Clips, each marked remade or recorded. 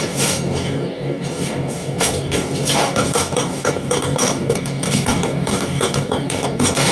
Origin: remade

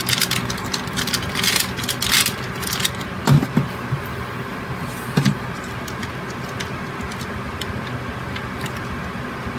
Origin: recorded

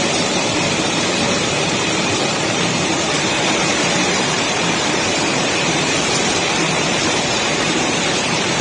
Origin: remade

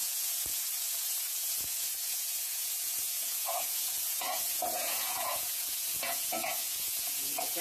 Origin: remade